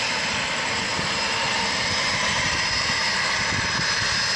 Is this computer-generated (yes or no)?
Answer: no